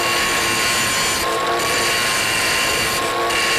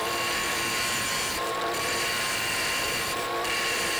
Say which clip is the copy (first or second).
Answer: second